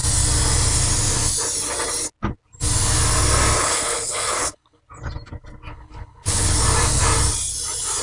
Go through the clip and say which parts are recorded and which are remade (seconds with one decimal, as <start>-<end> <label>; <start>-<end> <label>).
0.0-3.6 recorded; 3.6-4.8 remade; 4.8-5.7 recorded; 5.7-6.5 remade; 6.5-8.0 recorded